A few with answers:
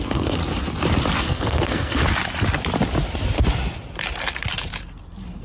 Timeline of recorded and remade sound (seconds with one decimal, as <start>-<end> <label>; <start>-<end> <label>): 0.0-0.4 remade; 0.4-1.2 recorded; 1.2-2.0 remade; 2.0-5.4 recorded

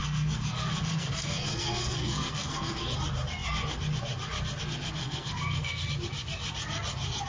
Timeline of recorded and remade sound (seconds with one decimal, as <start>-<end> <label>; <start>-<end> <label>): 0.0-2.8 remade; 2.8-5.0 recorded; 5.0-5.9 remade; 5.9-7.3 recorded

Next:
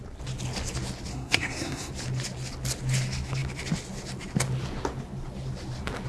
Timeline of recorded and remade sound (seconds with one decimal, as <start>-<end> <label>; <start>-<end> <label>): 0.0-1.1 recorded; 1.1-1.9 remade; 1.9-6.1 recorded

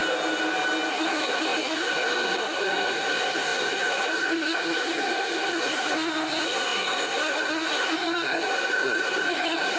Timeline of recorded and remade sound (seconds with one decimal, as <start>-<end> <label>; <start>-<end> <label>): 0.0-0.9 recorded; 0.9-9.8 remade